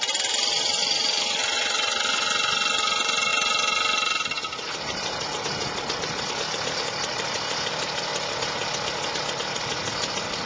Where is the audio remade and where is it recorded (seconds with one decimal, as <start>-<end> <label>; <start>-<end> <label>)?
0.0-3.3 remade; 3.3-6.2 recorded; 6.2-8.1 remade; 8.1-10.1 recorded; 10.1-10.5 remade

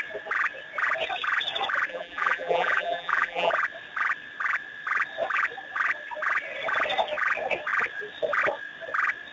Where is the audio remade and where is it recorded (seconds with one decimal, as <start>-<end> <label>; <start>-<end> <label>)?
0.0-1.9 recorded; 1.9-3.5 remade; 3.5-9.3 recorded

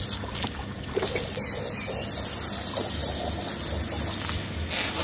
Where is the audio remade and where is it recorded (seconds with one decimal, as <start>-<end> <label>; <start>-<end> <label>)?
0.0-5.0 recorded

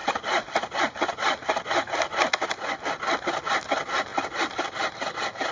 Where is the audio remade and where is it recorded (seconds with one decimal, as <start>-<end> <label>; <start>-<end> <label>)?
0.0-5.5 recorded

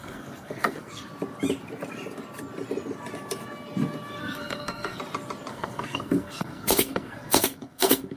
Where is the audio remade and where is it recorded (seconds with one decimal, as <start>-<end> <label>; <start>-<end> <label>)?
0.0-1.1 remade; 1.1-4.2 recorded; 4.2-5.0 remade; 5.0-5.5 recorded; 5.5-8.2 remade

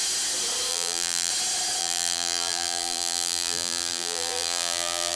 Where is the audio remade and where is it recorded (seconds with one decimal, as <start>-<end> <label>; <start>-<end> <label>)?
0.0-0.7 recorded; 0.7-1.3 remade; 1.3-1.8 recorded; 1.8-5.2 remade

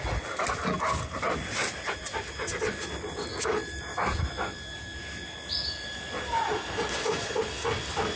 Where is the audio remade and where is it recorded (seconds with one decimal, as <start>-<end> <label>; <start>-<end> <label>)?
0.0-8.2 recorded

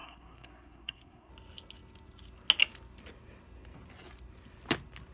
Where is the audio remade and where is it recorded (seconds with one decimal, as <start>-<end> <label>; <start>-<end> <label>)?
0.0-1.3 remade; 1.3-5.1 recorded